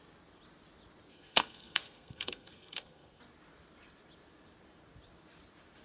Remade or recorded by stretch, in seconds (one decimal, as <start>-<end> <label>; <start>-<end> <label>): 0.0-1.1 recorded; 1.1-3.2 remade; 3.2-5.8 recorded